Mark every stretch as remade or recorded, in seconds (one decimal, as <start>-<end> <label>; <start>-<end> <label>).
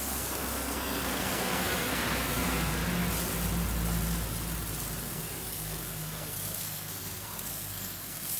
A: 0.0-2.8 remade; 2.8-5.0 recorded; 5.0-8.4 remade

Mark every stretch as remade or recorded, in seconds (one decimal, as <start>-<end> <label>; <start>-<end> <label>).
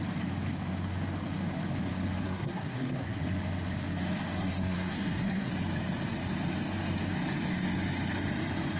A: 0.0-2.2 recorded; 2.2-3.2 remade; 3.2-4.4 recorded; 4.4-5.5 remade; 5.5-8.8 recorded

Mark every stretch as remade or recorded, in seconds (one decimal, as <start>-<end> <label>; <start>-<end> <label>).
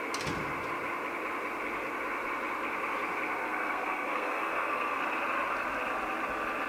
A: 0.0-3.4 recorded; 3.4-5.0 remade; 5.0-6.7 recorded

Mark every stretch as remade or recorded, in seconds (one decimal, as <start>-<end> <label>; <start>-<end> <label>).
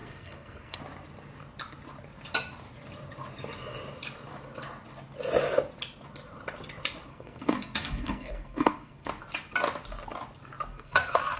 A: 0.0-0.8 remade; 0.8-7.1 recorded; 7.1-9.1 remade; 9.1-10.7 recorded; 10.7-11.4 remade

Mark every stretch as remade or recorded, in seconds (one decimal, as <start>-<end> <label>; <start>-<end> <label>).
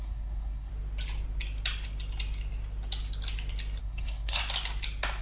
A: 0.0-0.7 remade; 0.7-3.8 recorded; 3.8-4.4 remade; 4.4-5.2 recorded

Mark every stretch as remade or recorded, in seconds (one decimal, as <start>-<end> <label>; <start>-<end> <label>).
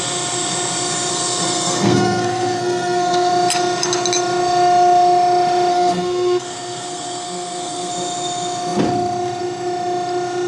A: 0.0-1.1 recorded; 1.1-3.3 remade; 3.3-5.7 recorded; 5.7-7.9 remade; 7.9-10.5 recorded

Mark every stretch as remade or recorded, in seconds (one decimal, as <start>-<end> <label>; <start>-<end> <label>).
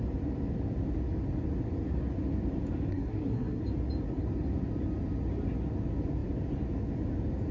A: 0.0-2.9 recorded; 2.9-3.6 remade; 3.6-7.5 recorded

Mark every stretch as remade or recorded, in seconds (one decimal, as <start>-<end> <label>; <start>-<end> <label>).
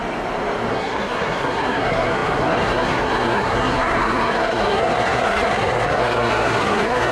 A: 0.0-0.7 recorded; 0.7-7.1 remade